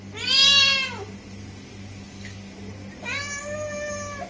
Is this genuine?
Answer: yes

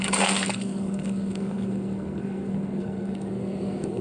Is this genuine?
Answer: no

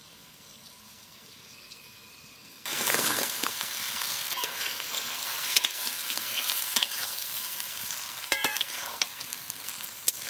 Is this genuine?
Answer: no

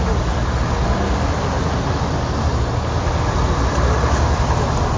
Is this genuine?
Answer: yes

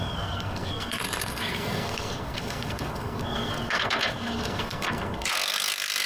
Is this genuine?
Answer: no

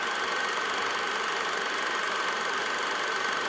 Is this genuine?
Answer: yes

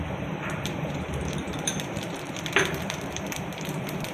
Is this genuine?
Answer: no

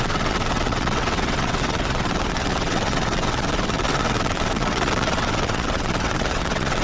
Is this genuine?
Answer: no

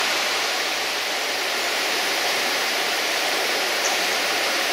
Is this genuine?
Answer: no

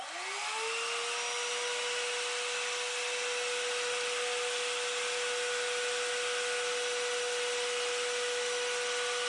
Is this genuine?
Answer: yes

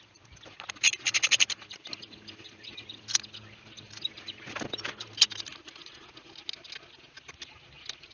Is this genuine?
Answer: yes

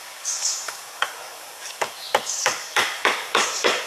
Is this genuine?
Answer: no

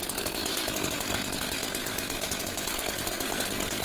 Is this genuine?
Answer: no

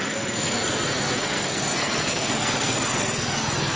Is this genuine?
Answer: no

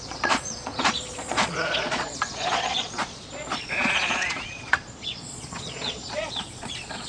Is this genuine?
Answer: no